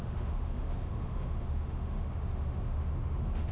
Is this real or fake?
fake